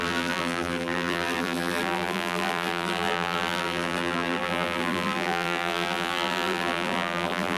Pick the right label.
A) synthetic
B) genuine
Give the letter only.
A